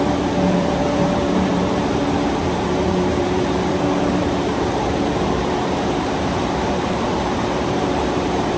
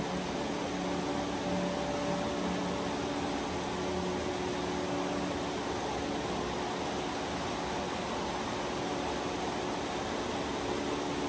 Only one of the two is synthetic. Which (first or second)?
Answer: first